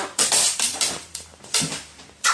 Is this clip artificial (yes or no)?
yes